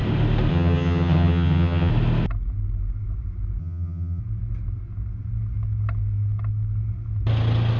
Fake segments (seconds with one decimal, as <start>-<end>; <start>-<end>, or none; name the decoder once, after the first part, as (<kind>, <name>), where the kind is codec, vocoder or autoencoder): 0.5-1.9 (vocoder, HiFi-GAN); 3.6-4.2